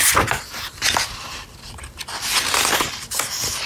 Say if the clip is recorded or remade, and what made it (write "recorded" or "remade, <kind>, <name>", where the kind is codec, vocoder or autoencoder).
recorded